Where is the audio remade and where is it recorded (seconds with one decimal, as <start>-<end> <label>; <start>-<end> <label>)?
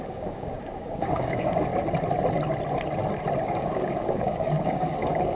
0.0-1.7 remade; 1.7-3.4 recorded; 3.4-5.3 remade